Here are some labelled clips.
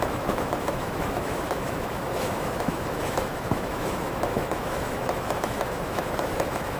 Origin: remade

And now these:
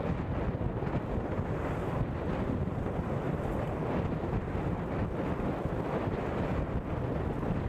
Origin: recorded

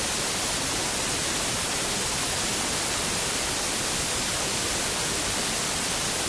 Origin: recorded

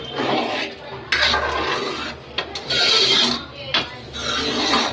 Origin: recorded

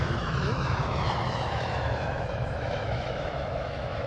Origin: remade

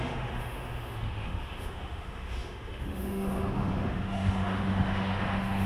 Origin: remade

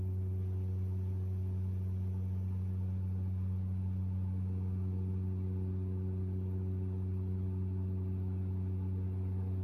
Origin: recorded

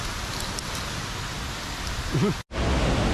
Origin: recorded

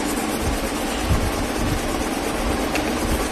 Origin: recorded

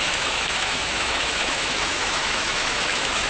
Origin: remade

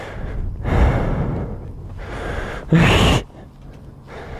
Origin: recorded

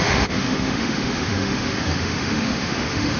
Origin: remade